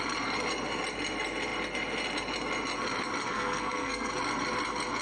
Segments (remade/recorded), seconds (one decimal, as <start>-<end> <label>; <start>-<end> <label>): 0.0-3.3 recorded; 3.3-4.1 remade; 4.1-5.0 recorded